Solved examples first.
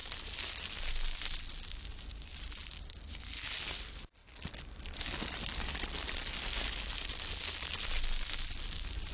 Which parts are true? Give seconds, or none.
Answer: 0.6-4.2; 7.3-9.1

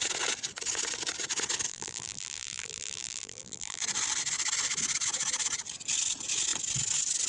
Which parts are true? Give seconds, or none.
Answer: 0.0-1.7; 3.8-7.3

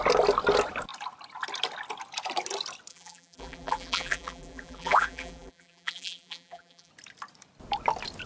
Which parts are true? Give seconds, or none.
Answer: 0.0-2.9; 6.9-8.3

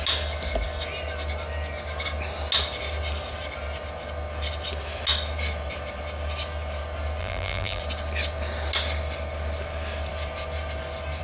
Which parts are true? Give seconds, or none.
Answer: 0.0-7.2; 7.8-11.2